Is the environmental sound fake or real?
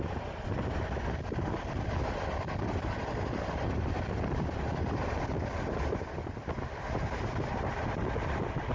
real